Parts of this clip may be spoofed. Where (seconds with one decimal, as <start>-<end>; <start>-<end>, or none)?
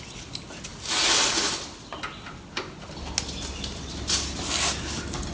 none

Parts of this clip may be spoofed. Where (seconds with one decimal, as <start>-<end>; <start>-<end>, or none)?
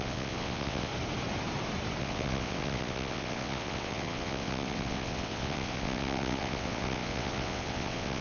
0.0-0.9; 2.0-8.2